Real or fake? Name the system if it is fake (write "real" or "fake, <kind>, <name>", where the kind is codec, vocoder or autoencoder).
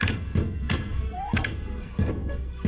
fake, codec, SNAC